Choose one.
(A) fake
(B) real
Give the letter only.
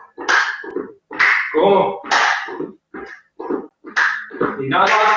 B